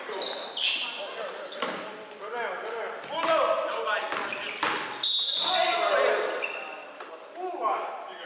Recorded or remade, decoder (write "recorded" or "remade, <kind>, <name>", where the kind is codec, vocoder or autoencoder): recorded